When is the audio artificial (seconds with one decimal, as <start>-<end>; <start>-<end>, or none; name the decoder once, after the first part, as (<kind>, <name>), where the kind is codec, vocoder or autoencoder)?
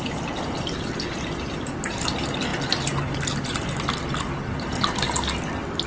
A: none